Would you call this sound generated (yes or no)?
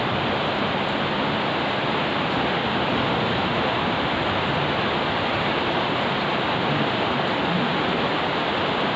no